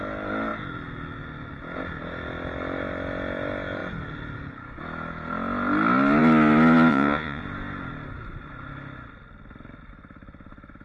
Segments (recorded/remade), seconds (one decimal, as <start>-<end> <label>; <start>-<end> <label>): 0.0-6.9 recorded; 6.9-7.4 remade; 7.4-10.8 recorded